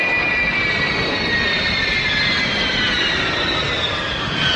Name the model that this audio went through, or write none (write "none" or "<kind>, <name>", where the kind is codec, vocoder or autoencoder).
none